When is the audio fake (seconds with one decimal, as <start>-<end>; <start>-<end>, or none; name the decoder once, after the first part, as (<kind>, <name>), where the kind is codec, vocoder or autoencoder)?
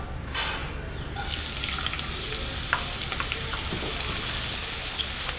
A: none